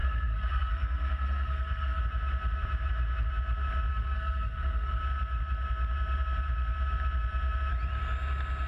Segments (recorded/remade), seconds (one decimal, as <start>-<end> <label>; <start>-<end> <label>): 0.0-2.0 remade; 2.0-3.9 recorded; 3.9-5.0 remade; 5.0-8.7 recorded